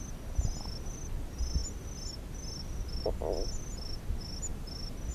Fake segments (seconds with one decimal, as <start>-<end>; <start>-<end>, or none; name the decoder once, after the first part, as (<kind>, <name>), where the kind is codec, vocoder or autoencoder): none